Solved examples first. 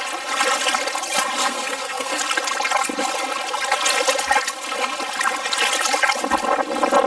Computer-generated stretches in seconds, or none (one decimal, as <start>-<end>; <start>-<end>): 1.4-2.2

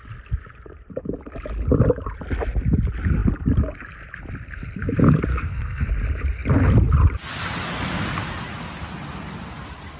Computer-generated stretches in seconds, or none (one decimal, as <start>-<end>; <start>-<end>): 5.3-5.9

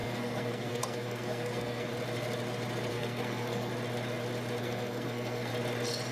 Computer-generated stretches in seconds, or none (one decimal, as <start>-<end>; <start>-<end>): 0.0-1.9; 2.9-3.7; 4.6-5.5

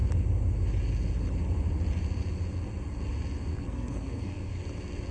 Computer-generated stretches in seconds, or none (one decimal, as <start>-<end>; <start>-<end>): 3.5-4.6

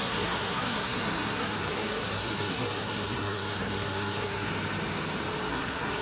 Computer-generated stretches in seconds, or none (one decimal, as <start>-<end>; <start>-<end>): 0.0-4.5; 5.5-6.0

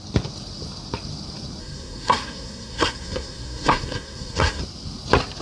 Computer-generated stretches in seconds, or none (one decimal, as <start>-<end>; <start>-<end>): 1.6-4.6